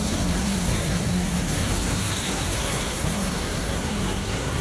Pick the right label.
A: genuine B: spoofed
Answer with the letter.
B